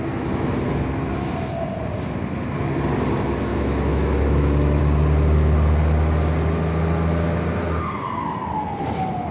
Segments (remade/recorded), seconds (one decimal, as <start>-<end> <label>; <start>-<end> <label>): 0.0-3.5 recorded; 3.5-4.8 remade; 4.8-9.3 recorded